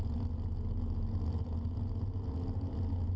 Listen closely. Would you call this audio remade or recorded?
recorded